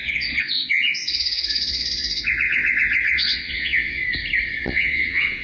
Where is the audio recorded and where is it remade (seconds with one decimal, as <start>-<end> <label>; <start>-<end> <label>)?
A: 0.0-4.0 remade; 4.0-4.6 recorded; 4.6-5.4 remade